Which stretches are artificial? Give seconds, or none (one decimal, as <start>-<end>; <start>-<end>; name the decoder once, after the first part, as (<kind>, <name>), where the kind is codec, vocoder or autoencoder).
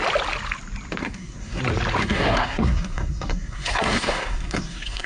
1.0-1.6 (codec, SNAC); 2.0-5.1